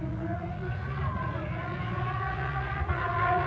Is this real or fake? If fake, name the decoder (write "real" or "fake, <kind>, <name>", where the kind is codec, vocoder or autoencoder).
fake, vocoder, Vocos